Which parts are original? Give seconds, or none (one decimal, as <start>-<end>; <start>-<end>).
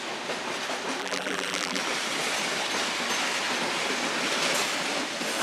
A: 0.0-1.0; 1.8-5.4